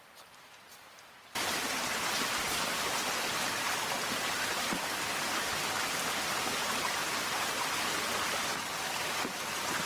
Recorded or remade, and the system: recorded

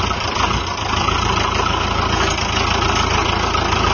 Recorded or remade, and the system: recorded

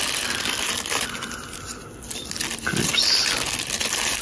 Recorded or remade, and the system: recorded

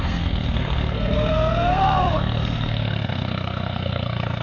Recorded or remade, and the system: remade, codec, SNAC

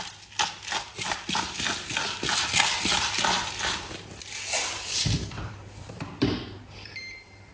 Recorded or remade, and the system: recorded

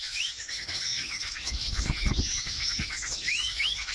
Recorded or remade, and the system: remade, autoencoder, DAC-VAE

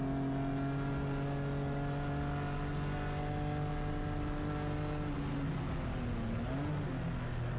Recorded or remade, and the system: recorded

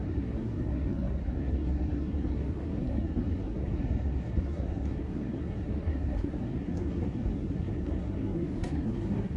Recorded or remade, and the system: remade, codec, SNAC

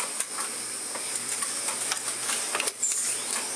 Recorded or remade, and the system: recorded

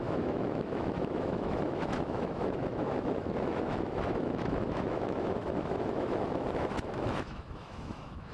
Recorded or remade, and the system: remade, autoencoder, DAC-VAE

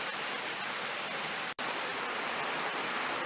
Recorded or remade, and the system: recorded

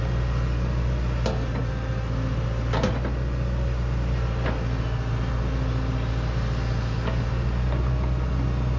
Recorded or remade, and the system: recorded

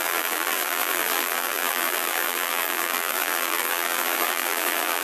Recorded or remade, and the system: remade, vocoder, BigVGAN v2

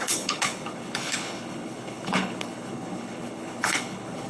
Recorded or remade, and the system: remade, codec, HILCodec